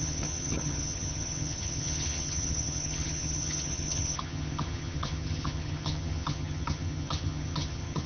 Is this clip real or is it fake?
fake